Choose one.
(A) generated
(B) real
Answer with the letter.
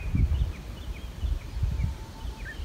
B